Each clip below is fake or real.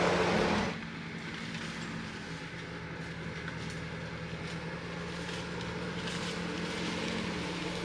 real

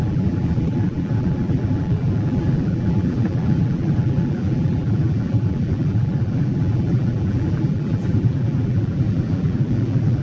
fake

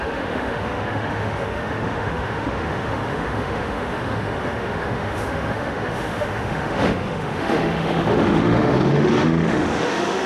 fake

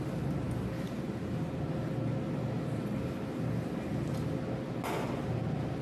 real